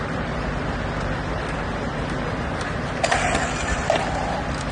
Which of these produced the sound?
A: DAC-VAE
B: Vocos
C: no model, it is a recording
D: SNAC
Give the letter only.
C